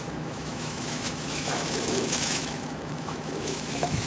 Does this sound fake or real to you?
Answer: fake